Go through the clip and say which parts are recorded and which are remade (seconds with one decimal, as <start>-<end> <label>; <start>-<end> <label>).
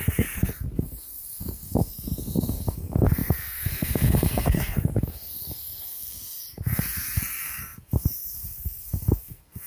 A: 0.0-9.7 remade